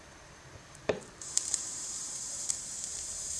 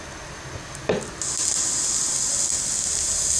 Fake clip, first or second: first